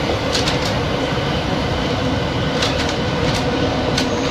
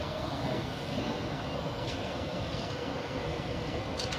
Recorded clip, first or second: first